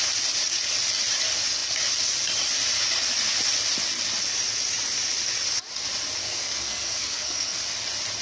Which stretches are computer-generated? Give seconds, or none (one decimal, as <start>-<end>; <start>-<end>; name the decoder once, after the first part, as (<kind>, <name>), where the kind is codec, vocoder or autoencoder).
6.2-7.6 (codec, SNAC)